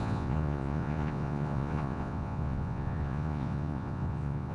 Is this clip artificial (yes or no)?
yes